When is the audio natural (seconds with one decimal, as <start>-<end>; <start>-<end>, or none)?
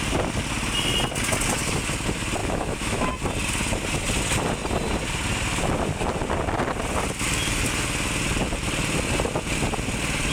0.0-2.4; 3.1-10.3